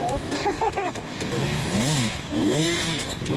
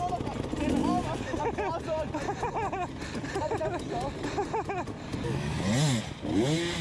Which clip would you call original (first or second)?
second